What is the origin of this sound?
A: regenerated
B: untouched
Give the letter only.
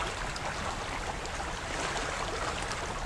B